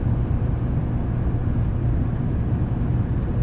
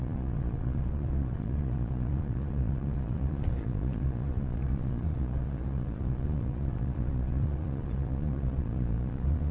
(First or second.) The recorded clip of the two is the first